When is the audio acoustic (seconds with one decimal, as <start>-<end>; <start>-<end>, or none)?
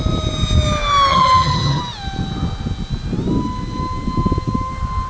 0.0-1.1; 1.8-5.1